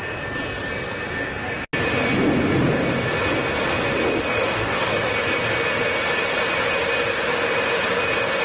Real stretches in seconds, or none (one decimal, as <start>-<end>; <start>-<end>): 0.0-4.3; 5.1-8.4